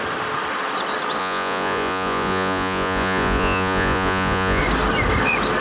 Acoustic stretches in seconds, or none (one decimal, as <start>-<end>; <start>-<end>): 0.0-1.2; 4.6-5.6